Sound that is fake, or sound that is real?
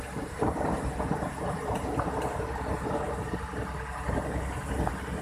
real